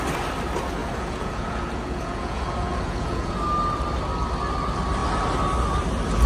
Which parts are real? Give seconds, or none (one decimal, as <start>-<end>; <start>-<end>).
0.0-0.8; 3.4-6.3